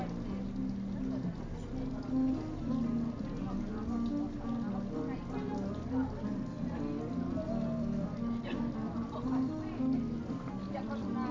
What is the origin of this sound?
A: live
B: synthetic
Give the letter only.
A